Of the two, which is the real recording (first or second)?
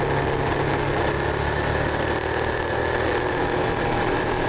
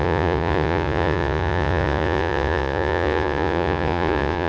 first